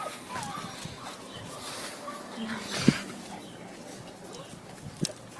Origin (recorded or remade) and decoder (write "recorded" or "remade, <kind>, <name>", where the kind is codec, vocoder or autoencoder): recorded